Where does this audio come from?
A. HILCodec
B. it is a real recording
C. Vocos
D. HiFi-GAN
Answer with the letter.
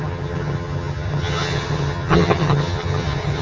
D